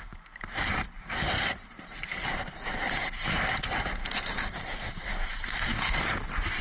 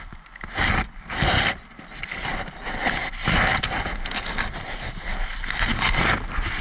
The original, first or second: second